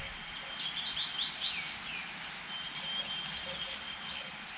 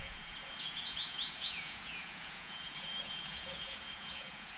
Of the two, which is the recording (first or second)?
first